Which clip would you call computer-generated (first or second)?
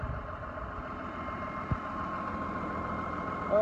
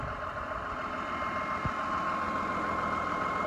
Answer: first